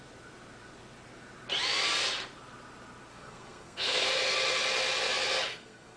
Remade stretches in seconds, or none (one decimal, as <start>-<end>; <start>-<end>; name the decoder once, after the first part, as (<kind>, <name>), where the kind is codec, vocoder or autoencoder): 3.1-4.1 (codec, SNAC); 5.5-6.0